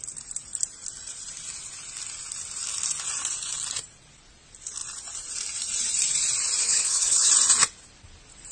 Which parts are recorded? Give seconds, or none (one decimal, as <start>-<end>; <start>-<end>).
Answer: 0.0-6.6; 7.3-8.5